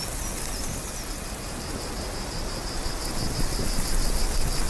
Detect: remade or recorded recorded